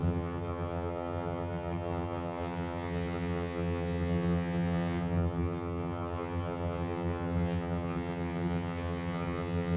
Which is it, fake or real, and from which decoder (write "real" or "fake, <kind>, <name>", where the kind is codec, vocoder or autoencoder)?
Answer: fake, vocoder, HiFi-GAN